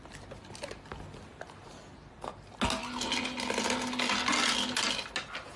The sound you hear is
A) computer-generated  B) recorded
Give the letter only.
B